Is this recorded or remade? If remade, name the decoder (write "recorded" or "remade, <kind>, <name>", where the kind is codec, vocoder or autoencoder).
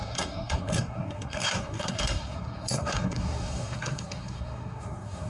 remade, codec, SNAC